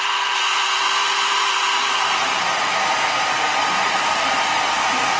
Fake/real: fake